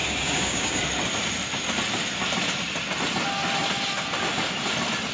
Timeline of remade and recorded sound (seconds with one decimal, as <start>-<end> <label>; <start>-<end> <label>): 0.0-0.8 remade; 0.8-5.1 recorded